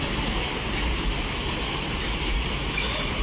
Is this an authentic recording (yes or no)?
yes